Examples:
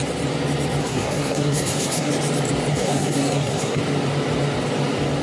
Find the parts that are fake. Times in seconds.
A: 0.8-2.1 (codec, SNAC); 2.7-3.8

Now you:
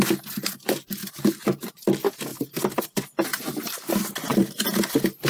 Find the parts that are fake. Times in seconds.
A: 1.0-1.7 (vocoder, BigVGAN v2); 2.3-2.8; 3.3-3.9; 4.3-4.8